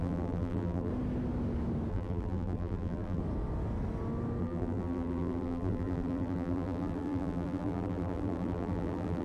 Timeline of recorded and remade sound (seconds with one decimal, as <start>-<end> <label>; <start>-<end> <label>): 0.0-0.9 remade; 0.9-1.9 recorded; 1.9-3.2 remade; 3.2-4.4 recorded; 4.4-9.2 remade